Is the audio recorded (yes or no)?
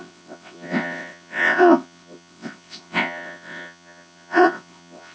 no